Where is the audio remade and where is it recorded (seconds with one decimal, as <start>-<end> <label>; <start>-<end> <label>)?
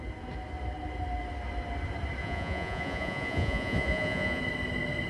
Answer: 0.0-2.2 recorded; 2.2-4.4 remade; 4.4-5.1 recorded